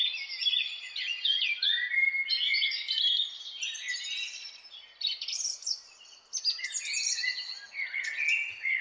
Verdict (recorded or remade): recorded